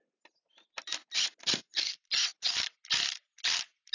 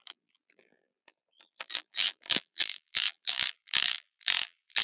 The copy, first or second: second